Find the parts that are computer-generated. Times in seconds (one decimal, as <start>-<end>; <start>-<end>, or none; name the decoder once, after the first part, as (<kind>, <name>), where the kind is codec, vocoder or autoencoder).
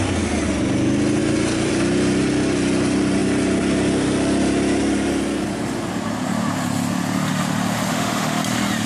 7.9-8.4 (autoencoder, DAC-VAE)